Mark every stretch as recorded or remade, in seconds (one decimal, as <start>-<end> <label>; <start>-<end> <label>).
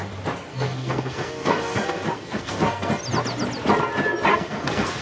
0.0-0.5 recorded; 0.5-3.0 remade; 3.0-4.3 recorded; 4.3-5.0 remade